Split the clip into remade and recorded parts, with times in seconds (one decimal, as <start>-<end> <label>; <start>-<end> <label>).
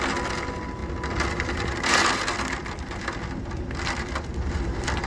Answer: 0.0-5.1 recorded